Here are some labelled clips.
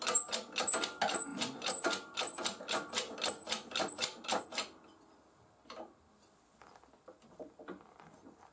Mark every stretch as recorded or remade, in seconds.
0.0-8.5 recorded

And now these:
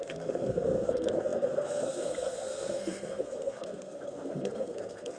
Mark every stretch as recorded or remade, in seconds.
0.0-5.2 remade

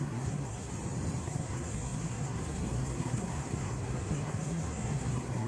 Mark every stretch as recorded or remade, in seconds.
0.0-0.7 remade; 0.7-1.2 recorded; 1.2-5.5 remade

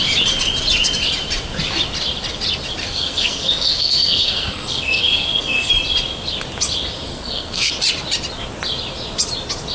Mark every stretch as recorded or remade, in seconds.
0.0-2.8 recorded; 2.8-5.7 remade; 5.7-7.1 recorded; 7.1-7.7 remade; 7.7-9.7 recorded

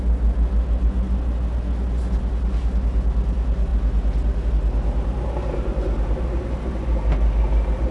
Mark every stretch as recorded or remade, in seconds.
0.0-7.9 recorded